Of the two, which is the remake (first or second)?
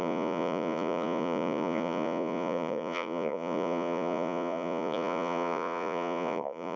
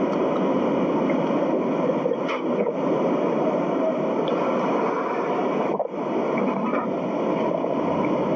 first